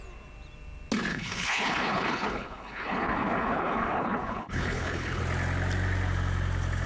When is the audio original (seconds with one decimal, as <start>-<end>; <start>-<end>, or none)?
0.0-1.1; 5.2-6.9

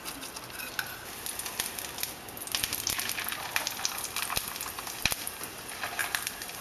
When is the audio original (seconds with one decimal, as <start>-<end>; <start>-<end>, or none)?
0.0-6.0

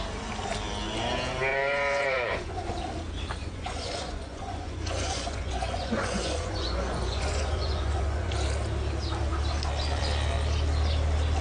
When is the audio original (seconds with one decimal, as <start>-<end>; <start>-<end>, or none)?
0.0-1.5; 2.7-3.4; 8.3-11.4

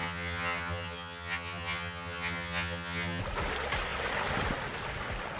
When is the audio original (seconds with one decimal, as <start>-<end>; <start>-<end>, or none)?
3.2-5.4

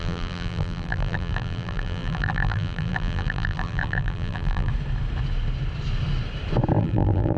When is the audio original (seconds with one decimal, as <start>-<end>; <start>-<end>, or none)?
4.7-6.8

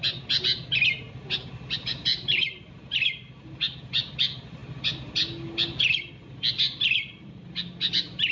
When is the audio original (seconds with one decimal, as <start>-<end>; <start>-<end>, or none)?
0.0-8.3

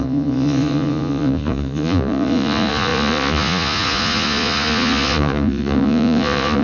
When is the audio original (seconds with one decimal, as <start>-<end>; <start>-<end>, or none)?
none

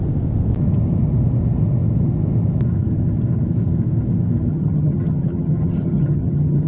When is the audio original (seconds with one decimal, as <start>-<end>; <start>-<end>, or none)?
0.0-4.5